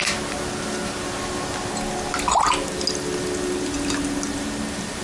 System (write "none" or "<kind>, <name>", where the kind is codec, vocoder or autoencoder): none